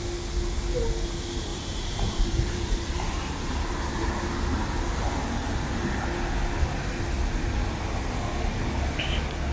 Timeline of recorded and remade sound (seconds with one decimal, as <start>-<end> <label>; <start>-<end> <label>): 0.0-1.5 recorded; 1.5-5.8 remade; 5.8-9.5 recorded